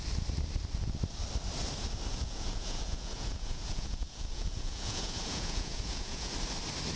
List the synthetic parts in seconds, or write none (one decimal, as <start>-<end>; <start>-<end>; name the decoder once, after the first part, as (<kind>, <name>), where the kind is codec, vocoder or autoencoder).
2.1-6.3 (vocoder, Vocos)